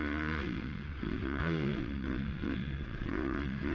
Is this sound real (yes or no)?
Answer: no